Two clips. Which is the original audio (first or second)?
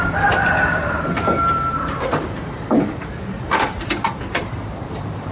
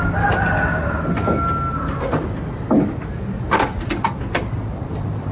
second